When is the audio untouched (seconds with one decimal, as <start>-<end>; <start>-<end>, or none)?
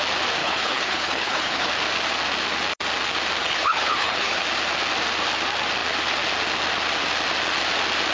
0.0-0.4; 1.7-3.4; 4.4-8.1